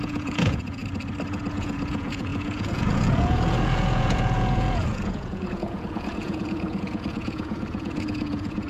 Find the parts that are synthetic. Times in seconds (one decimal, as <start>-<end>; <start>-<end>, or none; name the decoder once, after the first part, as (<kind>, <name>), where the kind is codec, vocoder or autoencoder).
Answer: 0.0-0.8 (vocoder, Vocos); 1.5-8.7